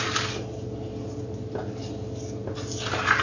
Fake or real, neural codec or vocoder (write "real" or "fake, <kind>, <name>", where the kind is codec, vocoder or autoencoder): real